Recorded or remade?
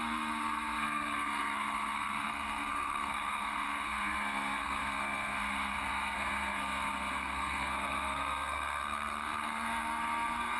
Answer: remade